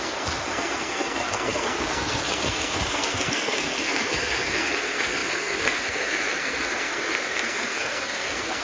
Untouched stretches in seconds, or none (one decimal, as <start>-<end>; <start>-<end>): none